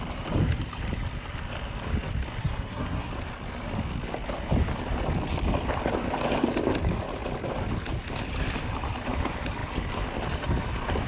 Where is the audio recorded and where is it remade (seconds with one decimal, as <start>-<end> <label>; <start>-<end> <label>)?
0.0-2.4 recorded; 2.4-3.1 remade; 3.1-11.1 recorded